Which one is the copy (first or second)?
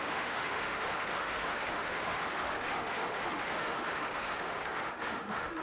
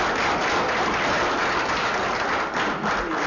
first